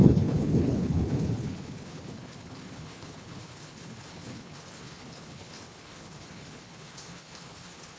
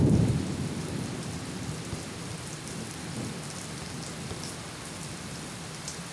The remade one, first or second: first